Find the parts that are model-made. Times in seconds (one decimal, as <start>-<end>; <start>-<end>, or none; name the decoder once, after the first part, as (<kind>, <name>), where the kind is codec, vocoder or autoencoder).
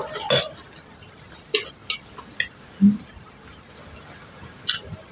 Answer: none